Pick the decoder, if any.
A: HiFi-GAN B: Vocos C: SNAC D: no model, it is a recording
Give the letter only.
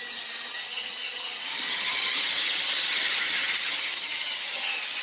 A